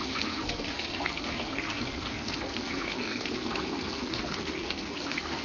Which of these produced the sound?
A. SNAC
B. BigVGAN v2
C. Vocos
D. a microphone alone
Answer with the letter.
A